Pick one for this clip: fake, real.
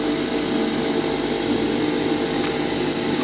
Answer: real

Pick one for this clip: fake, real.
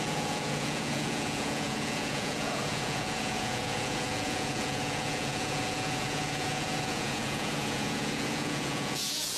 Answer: fake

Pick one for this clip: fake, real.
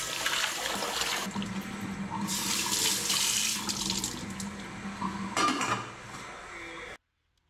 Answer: real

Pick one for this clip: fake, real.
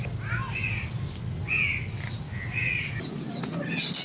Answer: real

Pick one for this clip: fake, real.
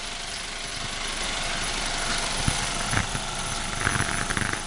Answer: fake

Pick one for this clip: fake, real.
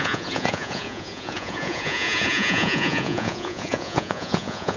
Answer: fake